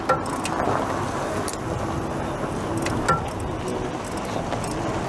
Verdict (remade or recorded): recorded